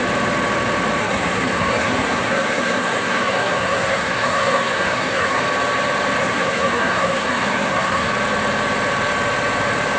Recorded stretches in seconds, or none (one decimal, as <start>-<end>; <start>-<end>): 0.0-1.0; 5.4-6.2; 8.1-10.0